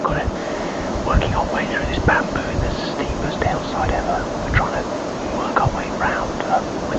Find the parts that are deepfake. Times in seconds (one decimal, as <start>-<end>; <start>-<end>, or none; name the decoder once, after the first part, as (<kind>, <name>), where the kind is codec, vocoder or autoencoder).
0.4-1.0 (autoencoder, DAC-VAE); 1.5-2.5